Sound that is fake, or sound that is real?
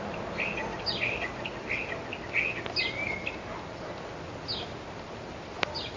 real